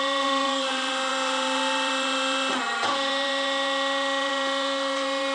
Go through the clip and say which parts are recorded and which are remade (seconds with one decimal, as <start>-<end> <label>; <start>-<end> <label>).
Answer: 0.0-5.3 remade